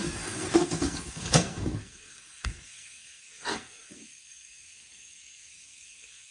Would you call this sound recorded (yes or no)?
no